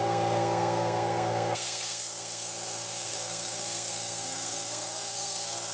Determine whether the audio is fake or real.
fake